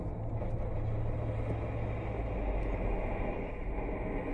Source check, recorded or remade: recorded